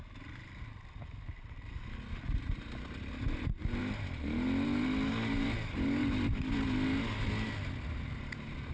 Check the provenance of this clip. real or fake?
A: real